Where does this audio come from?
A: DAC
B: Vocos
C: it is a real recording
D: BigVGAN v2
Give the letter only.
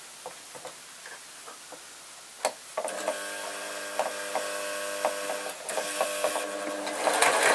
C